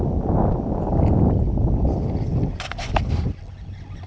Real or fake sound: real